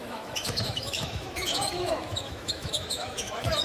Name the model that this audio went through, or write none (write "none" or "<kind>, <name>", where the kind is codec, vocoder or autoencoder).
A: autoencoder, DAC-VAE